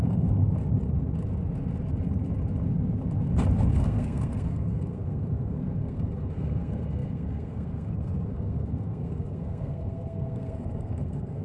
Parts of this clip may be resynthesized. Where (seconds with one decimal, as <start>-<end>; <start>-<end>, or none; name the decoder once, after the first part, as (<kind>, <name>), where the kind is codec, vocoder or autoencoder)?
0.0-0.4 (codec, SNAC); 3.7-11.4